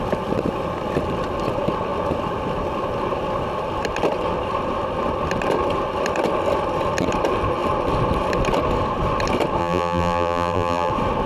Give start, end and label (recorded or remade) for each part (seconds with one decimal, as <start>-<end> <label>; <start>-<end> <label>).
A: 0.0-9.6 recorded; 9.6-10.9 remade; 10.9-11.3 recorded